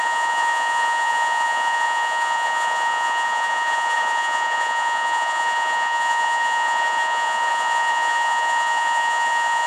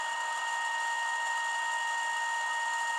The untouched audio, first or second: second